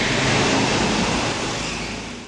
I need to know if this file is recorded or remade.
recorded